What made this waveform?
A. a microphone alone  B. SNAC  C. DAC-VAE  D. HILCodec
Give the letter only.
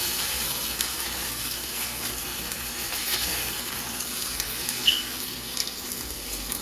B